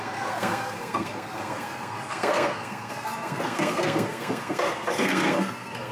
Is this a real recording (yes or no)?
no